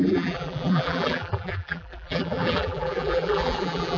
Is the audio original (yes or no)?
no